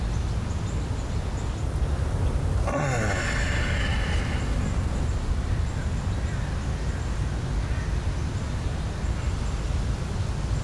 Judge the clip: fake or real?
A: real